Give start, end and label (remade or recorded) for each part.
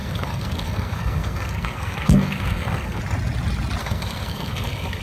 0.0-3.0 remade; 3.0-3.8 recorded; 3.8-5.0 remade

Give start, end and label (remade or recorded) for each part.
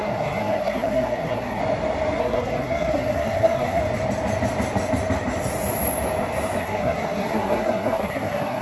0.0-1.6 remade; 1.6-2.2 recorded; 2.2-3.8 remade; 3.8-6.6 recorded; 6.6-8.6 remade